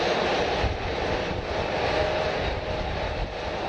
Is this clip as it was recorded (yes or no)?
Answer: no